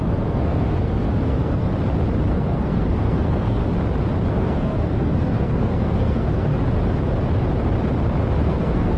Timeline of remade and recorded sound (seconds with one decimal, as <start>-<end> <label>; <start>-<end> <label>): 0.0-1.7 remade; 1.7-2.3 recorded; 2.3-3.6 remade; 3.6-4.3 recorded; 4.3-6.5 remade; 6.5-8.4 recorded; 8.4-9.0 remade